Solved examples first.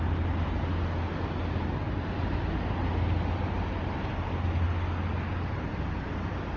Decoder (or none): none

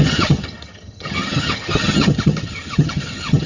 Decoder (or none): vocoder, HiFi-GAN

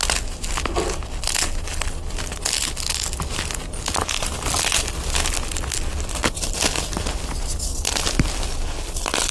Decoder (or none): none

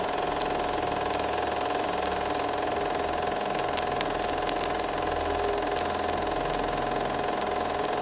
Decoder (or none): none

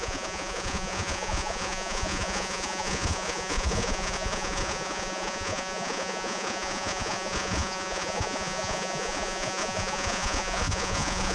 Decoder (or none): vocoder, Vocos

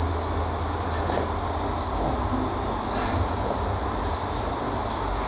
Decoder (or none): none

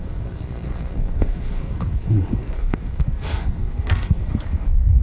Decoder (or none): codec, SNAC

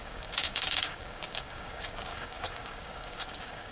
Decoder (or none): codec, DAC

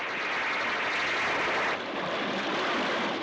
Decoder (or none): none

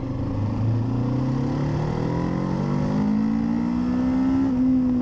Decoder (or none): none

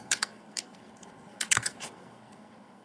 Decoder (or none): codec, SNAC